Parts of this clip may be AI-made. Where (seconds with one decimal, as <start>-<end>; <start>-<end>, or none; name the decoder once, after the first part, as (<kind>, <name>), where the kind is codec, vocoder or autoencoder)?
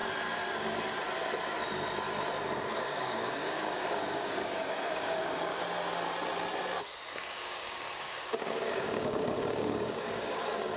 2.9-5.5 (codec, DAC); 7.1-10.8